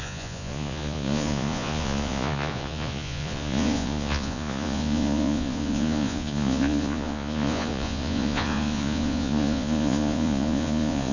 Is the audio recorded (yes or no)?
no